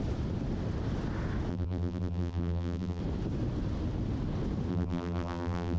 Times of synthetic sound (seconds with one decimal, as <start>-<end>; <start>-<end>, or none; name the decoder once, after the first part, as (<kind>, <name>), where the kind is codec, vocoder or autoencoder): 1.5-3.0 (vocoder, BigVGAN v2); 4.7-5.8